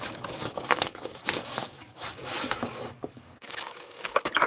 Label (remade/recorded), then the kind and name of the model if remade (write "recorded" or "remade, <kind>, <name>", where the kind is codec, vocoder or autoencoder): remade, codec, DAC